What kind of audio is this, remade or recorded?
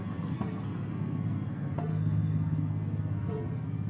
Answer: remade